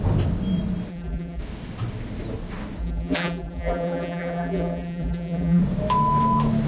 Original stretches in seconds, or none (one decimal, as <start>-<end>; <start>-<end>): 0.0-0.9; 1.4-2.8; 5.6-6.7